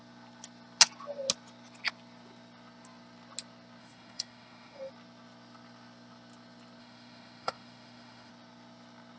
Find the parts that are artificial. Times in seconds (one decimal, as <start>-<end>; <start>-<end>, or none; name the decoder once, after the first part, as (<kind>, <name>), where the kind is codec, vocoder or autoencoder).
3.8-4.9 (autoencoder, DAC-VAE); 6.8-8.3